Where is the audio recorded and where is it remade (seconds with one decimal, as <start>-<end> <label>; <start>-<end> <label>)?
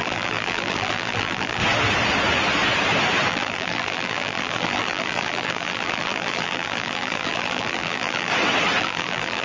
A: 0.0-1.6 remade; 1.6-3.3 recorded; 3.3-8.3 remade; 8.3-8.8 recorded; 8.8-9.4 remade